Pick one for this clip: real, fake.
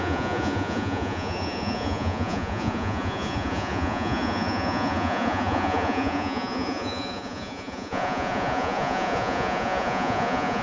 fake